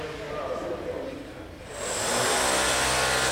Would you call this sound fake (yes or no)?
no